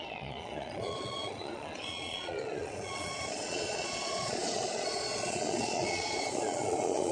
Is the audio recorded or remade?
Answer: remade